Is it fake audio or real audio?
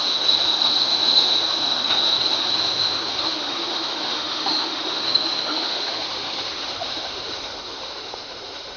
fake